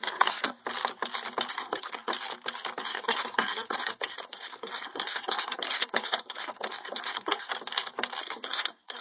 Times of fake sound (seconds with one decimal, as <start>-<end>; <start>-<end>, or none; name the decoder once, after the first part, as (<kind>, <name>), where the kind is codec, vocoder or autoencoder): 0.0-0.6 (codec, SNAC); 1.5-2.1; 2.8-7.5; 8.2-9.0